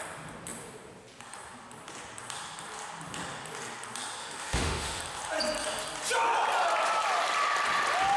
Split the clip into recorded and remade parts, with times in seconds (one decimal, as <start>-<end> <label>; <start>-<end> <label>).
0.0-4.2 recorded; 4.2-5.0 remade; 5.0-8.2 recorded